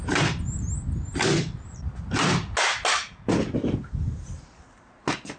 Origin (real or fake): real